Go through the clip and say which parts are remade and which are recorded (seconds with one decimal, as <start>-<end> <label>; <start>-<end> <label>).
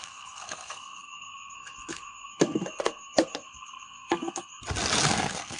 0.0-4.5 remade; 4.5-5.1 recorded; 5.1-5.6 remade